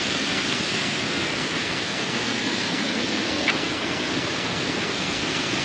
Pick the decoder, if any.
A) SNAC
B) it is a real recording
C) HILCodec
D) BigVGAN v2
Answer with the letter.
A